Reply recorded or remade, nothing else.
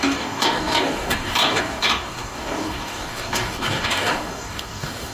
remade